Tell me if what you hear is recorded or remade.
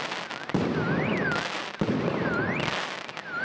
recorded